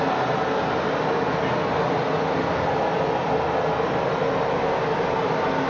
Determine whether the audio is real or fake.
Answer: real